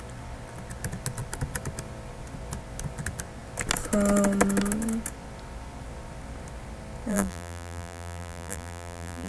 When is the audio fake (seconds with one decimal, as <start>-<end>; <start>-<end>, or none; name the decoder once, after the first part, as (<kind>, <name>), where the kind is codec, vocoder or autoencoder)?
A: 7.1-9.3 (vocoder, BigVGAN v2)